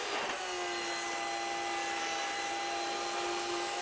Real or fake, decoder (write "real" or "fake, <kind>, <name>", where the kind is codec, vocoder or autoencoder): real